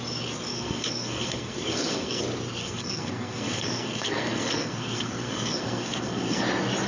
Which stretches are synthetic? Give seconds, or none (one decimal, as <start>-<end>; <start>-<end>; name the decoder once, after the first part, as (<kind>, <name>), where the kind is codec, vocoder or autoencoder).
0.5-2.2 (codec, SNAC); 2.6-6.4